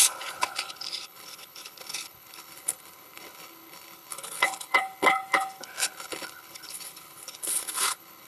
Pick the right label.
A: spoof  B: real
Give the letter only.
A